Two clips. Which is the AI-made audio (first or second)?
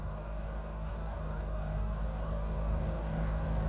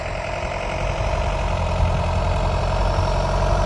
first